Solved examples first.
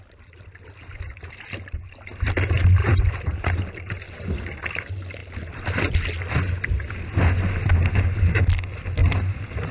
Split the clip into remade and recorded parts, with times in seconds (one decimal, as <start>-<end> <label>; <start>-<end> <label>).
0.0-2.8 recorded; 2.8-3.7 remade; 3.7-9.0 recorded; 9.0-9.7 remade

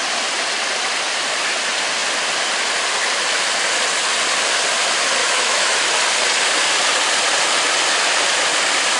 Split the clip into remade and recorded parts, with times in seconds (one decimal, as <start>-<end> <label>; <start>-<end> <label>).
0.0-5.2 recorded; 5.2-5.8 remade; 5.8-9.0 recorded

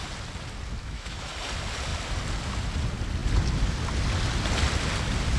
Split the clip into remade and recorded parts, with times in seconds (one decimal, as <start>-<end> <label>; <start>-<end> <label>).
0.0-0.8 recorded; 0.8-1.3 remade; 1.3-5.4 recorded

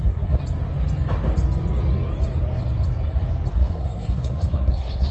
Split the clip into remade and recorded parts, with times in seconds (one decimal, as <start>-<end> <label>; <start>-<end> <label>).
0.0-0.4 remade; 0.4-3.5 recorded; 3.5-5.1 remade

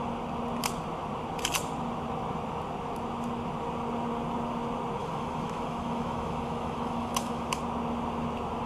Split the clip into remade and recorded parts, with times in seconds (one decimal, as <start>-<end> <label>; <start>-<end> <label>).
0.0-5.0 recorded; 5.0-7.6 remade; 7.6-8.7 recorded